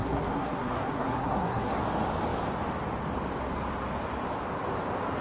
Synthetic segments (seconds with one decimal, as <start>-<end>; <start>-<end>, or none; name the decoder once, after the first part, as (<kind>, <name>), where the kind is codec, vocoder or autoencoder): 0.0-1.8 (codec, SNAC)